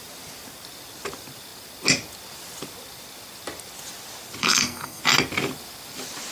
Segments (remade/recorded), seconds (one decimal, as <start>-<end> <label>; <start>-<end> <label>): 0.0-4.4 recorded; 4.4-5.0 remade; 5.0-6.3 recorded